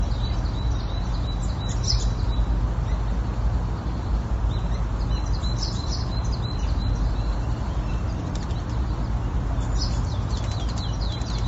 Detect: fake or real real